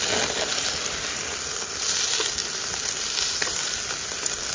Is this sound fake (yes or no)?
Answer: no